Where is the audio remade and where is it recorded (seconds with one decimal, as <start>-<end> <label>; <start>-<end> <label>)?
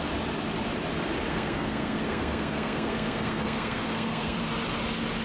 0.0-1.3 recorded; 1.3-4.4 remade; 4.4-5.2 recorded